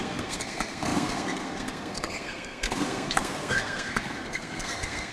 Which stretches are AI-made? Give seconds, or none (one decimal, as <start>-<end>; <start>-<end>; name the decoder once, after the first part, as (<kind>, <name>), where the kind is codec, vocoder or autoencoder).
0.0-5.1 (codec, SNAC)